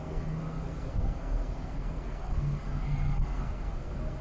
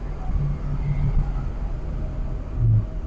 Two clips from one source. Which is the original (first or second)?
second